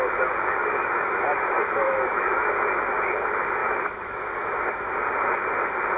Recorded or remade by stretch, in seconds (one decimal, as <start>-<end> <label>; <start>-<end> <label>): 0.0-0.6 recorded; 0.6-2.5 remade; 2.5-3.6 recorded; 3.6-4.9 remade; 4.9-6.0 recorded

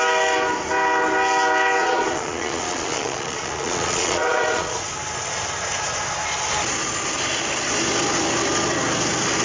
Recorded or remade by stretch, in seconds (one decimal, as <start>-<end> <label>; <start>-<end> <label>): 0.0-1.8 recorded; 1.8-4.8 remade; 4.8-9.4 recorded

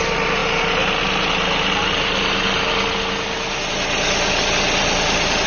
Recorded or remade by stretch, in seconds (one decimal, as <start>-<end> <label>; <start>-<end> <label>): 0.0-5.5 recorded

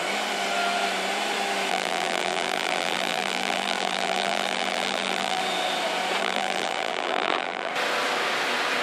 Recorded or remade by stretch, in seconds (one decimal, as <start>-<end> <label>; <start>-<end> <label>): 0.0-1.7 recorded; 1.7-5.4 remade; 5.4-6.2 recorded; 6.2-7.7 remade; 7.7-8.8 recorded

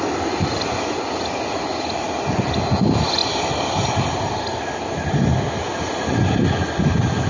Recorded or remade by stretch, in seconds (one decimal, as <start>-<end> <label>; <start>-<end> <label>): 0.0-7.3 recorded

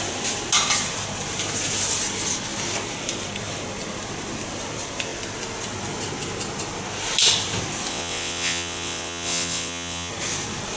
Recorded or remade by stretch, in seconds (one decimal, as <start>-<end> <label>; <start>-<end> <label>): 0.0-7.9 recorded; 7.9-10.1 remade; 10.1-10.8 recorded

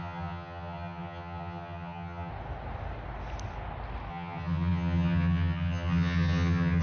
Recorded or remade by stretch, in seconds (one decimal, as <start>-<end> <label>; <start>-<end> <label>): 0.0-2.3 remade; 2.3-4.1 recorded; 4.1-6.8 remade